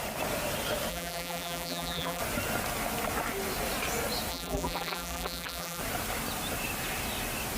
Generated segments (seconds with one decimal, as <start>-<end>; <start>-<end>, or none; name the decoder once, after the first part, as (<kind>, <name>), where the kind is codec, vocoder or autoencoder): 0.9-2.2 (vocoder, BigVGAN v2); 4.3-5.8